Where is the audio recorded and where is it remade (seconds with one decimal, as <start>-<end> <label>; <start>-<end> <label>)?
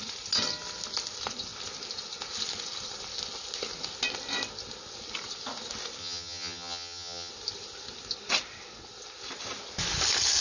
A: 0.0-6.0 recorded; 6.0-7.3 remade; 7.3-10.4 recorded